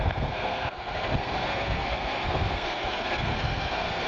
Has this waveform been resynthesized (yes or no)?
yes